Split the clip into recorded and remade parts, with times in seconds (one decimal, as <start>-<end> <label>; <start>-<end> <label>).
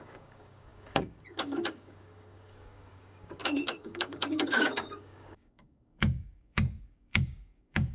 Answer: 0.0-7.9 remade